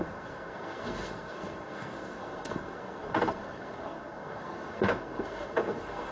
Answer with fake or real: fake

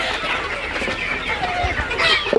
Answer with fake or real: real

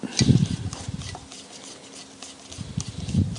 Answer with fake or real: real